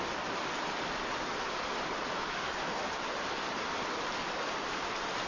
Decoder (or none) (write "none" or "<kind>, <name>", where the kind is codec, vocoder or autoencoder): none